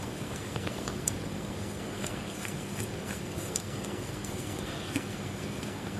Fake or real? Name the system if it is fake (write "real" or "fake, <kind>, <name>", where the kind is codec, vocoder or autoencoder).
fake, codec, SNAC